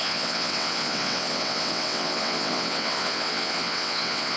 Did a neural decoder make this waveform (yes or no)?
yes